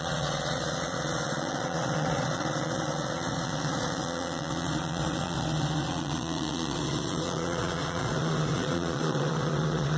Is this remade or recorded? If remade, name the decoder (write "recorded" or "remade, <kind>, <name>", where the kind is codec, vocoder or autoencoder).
remade, vocoder, Vocos